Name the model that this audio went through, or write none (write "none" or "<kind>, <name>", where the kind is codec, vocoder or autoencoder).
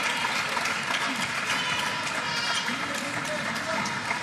none